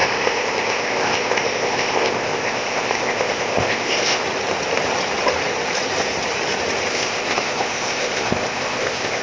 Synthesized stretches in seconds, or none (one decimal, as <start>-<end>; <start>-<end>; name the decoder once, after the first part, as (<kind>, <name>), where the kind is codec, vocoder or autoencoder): 0.0-4.2 (codec, ZipCodec); 6.9-9.2